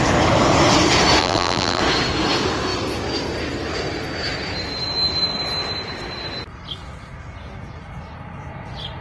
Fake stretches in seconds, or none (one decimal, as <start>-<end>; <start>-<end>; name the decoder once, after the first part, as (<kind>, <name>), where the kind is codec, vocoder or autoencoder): 1.2-1.8 (vocoder, BigVGAN v2)